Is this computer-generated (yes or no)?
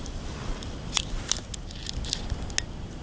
no